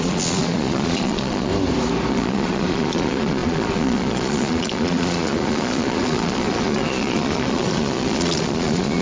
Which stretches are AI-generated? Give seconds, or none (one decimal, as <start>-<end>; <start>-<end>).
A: 0.0-1.5; 2.1-9.0

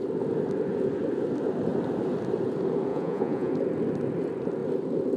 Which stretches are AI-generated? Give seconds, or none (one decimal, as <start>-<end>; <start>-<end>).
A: 2.9-3.5